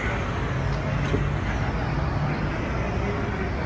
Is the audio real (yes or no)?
yes